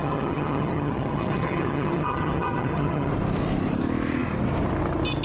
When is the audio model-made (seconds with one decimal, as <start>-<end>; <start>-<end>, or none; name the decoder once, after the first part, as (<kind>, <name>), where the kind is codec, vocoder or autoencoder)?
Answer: 0.0-3.1 (vocoder, HiFi-GAN)